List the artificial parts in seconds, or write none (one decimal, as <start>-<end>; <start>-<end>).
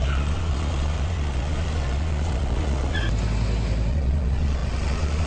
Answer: 0.0-3.0; 3.9-5.3